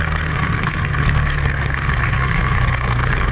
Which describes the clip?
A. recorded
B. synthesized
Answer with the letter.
B